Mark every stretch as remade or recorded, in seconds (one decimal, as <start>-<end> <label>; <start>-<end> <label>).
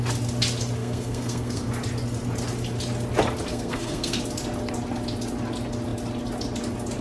0.0-0.8 recorded; 0.8-1.7 remade; 1.7-3.5 recorded; 3.5-4.2 remade; 4.2-7.0 recorded